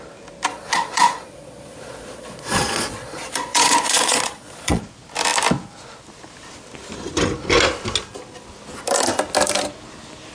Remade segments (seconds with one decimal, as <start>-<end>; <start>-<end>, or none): 0.5-4.8